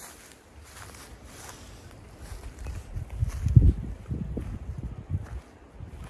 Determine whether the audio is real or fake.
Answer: real